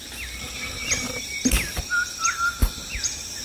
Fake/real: real